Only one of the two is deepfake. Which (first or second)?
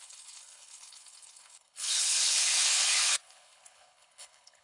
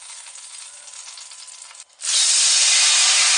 first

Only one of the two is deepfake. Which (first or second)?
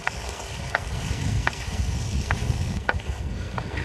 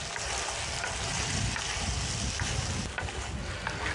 first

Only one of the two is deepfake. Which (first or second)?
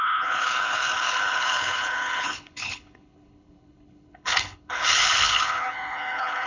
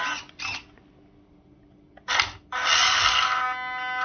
first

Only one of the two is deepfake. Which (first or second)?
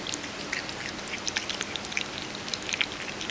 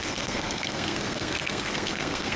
second